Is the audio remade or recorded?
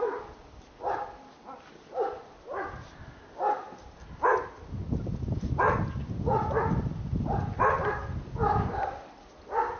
recorded